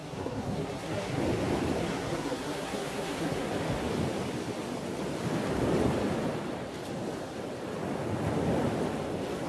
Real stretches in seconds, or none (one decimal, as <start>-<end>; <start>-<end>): 1.2-1.8; 3.5-9.5